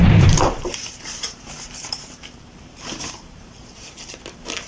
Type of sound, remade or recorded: remade